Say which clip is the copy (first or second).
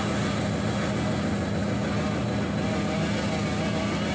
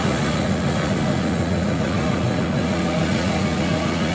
second